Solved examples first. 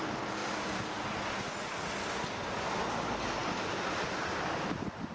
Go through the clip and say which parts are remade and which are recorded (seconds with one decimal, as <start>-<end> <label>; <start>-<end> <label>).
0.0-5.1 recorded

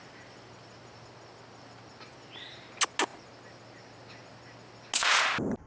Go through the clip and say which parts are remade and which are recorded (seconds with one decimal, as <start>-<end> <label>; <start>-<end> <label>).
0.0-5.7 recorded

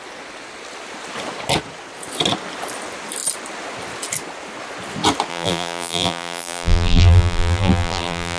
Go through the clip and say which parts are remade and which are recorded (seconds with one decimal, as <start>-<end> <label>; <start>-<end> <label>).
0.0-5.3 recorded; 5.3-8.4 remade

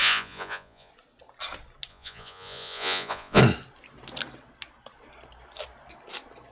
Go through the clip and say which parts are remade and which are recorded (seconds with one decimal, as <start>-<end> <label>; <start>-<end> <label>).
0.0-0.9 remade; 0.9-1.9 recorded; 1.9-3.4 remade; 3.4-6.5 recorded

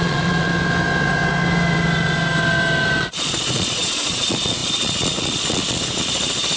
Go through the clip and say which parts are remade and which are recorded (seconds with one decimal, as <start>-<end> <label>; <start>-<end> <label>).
0.0-0.5 remade; 0.5-3.0 recorded; 3.0-6.6 remade

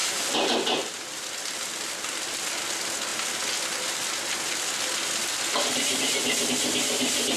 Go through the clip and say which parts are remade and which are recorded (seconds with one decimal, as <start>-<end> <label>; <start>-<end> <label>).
0.0-7.4 recorded

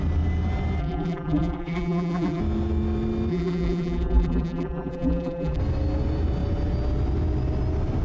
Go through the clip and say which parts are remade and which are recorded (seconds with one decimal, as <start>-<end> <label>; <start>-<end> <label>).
0.0-0.8 recorded; 0.8-2.4 remade; 2.4-3.3 recorded; 3.3-5.6 remade; 5.6-8.0 recorded

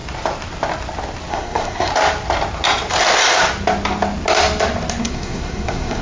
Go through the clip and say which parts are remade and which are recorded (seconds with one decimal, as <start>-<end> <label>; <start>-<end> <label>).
0.0-1.3 recorded; 1.3-1.9 remade; 1.9-5.0 recorded; 5.0-6.0 remade